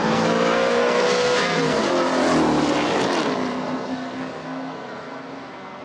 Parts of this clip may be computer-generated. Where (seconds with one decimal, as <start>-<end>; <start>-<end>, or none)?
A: 0.0-1.8; 3.5-5.8